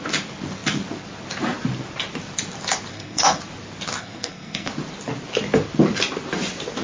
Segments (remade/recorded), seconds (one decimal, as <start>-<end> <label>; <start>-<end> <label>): 0.0-2.9 recorded; 2.9-3.4 remade; 3.4-4.0 recorded; 4.0-4.7 remade; 4.7-6.8 recorded